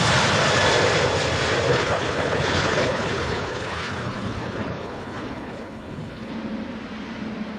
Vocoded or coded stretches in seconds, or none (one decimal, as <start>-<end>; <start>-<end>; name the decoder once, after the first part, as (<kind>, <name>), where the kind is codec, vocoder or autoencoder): 1.7-6.3 (codec, HILCodec)